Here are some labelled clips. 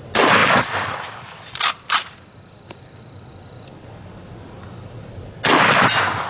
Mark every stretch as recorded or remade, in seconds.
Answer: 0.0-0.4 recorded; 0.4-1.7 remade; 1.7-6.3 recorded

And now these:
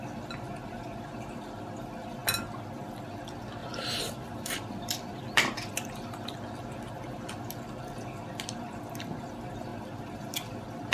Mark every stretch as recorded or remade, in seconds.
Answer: 0.0-3.6 recorded; 3.6-5.7 remade; 5.7-10.9 recorded

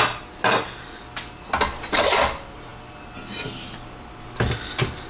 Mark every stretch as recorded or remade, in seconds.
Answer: 0.0-5.1 recorded

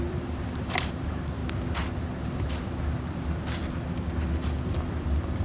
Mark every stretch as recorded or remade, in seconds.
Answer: 0.0-1.4 remade; 1.4-2.0 recorded; 2.0-3.6 remade; 3.6-4.9 recorded; 4.9-5.4 remade

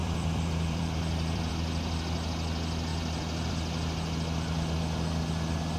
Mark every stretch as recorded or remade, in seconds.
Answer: 0.0-1.5 remade; 1.5-2.9 recorded; 2.9-3.5 remade; 3.5-5.8 recorded

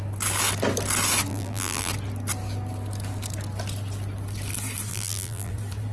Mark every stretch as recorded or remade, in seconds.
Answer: 0.0-1.3 recorded; 1.3-1.9 remade; 1.9-4.9 recorded; 4.9-5.5 remade; 5.5-5.9 recorded

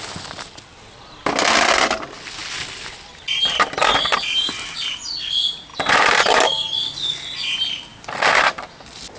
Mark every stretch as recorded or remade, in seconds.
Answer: 0.0-5.7 recorded; 5.7-6.4 remade; 6.4-9.2 recorded